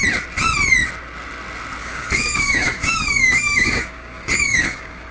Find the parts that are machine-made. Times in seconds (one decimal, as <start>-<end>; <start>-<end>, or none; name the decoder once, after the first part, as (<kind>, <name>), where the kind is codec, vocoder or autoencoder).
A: 1.8-5.1 (codec, DAC)